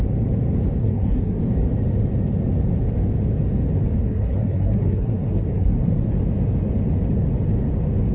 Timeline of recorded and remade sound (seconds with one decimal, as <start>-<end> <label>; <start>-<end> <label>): 0.0-0.8 recorded; 0.8-1.4 remade; 1.4-4.0 recorded; 4.0-6.1 remade; 6.1-8.1 recorded